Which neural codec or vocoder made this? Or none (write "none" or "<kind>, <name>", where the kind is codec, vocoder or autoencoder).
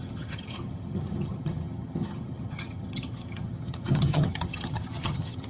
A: vocoder, HiFi-GAN